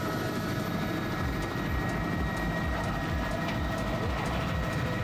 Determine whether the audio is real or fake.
real